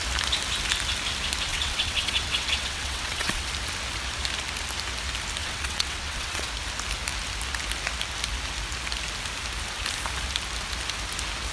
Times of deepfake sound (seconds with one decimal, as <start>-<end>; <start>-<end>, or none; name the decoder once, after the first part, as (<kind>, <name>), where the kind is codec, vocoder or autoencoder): 1.5-3.5 (vocoder, WaveNeXt); 5.4-6.5